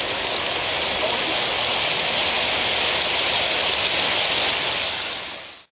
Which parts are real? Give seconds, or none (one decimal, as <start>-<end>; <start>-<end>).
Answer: 0.0-5.8